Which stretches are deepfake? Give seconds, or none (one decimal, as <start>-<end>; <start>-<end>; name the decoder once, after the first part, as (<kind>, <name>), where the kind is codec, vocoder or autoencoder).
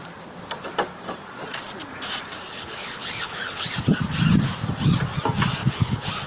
2.5-3.7 (codec, HILCodec); 5.6-6.3